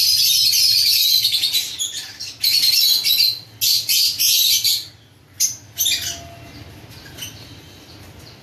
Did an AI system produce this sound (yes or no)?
no